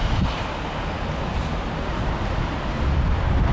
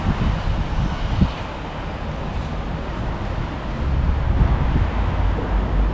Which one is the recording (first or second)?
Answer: second